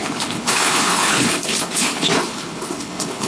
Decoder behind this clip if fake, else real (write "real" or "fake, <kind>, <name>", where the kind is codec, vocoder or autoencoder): fake, codec, HILCodec